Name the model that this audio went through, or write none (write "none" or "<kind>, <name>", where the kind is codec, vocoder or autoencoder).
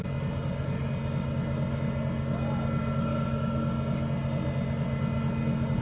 none